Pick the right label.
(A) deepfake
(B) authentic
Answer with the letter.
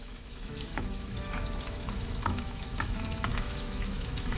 A